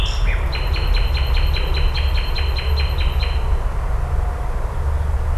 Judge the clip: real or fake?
real